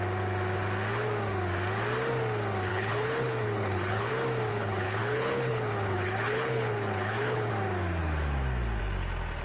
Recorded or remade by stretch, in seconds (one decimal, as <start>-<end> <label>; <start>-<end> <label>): 0.0-2.7 recorded; 2.7-4.1 remade; 4.1-4.5 recorded; 4.5-7.5 remade; 7.5-9.4 recorded